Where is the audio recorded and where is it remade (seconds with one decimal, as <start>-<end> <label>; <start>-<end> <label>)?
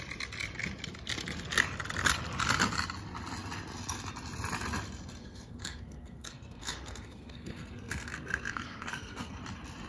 0.0-5.2 recorded; 5.2-9.4 remade; 9.4-9.9 recorded